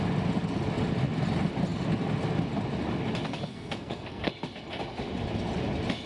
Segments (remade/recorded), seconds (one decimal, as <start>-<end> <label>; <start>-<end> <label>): 0.0-3.5 recorded; 3.5-4.3 remade; 4.3-6.1 recorded